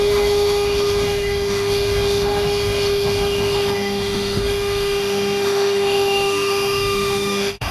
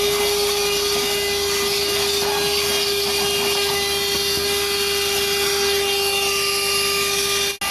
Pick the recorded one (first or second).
second